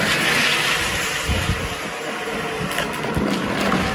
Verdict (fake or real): real